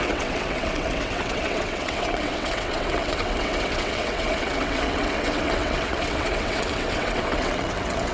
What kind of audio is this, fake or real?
fake